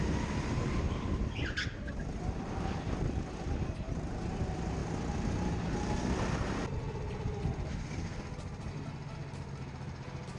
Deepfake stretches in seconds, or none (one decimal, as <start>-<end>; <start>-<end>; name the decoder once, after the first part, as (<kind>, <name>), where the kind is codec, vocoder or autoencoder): none